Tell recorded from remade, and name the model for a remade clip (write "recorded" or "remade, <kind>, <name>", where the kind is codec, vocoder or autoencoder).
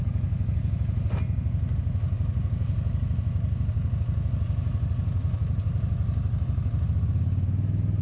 recorded